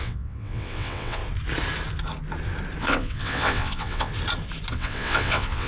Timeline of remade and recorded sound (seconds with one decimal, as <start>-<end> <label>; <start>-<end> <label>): 0.0-1.2 remade; 1.2-2.8 recorded; 2.8-4.1 remade; 4.1-4.7 recorded; 4.7-5.7 remade